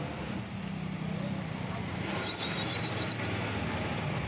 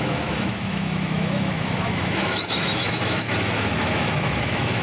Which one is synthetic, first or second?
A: second